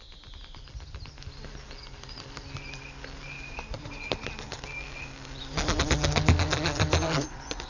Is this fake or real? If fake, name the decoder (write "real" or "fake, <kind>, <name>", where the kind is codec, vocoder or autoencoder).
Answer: real